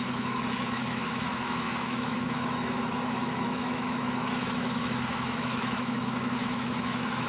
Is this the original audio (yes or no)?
no